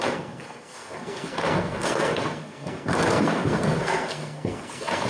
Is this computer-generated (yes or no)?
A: yes